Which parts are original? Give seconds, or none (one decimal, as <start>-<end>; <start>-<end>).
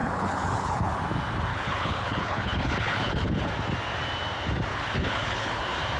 0.9-1.5; 3.5-4.7; 5.6-6.0